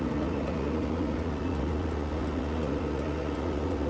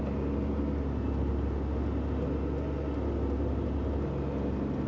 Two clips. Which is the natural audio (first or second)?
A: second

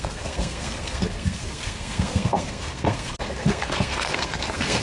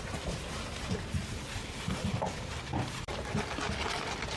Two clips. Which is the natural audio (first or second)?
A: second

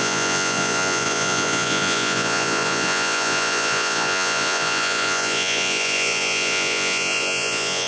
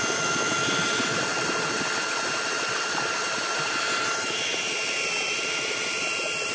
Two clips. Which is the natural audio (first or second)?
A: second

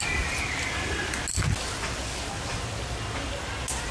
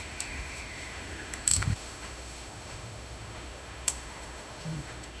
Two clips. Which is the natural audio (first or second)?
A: first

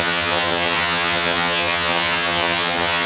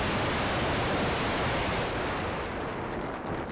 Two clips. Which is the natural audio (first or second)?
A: second